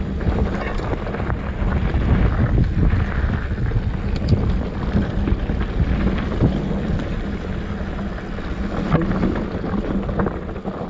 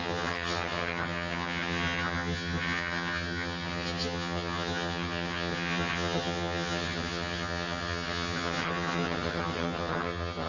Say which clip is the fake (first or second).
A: second